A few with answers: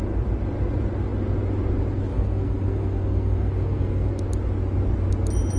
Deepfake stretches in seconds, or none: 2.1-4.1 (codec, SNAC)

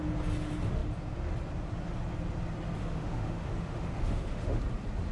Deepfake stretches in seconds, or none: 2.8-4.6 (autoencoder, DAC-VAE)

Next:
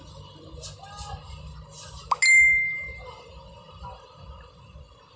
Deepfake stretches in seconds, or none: none

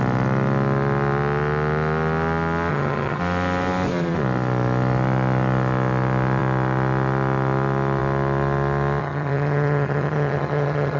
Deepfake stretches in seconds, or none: 2.7-3.2 (vocoder, HiFi-GAN); 9.0-11.0

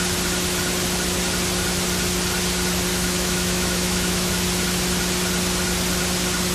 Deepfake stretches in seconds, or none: 2.9-4.3 (autoencoder, DAC-VAE)